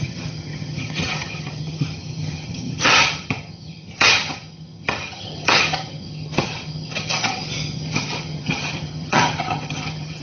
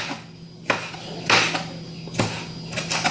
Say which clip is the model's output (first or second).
first